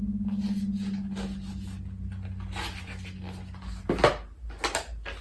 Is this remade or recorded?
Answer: recorded